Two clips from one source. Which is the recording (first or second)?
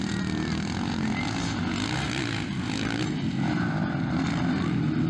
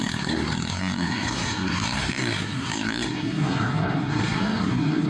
first